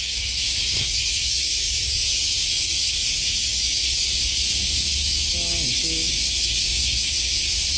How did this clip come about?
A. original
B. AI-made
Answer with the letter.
B